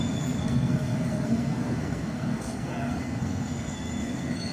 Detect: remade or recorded remade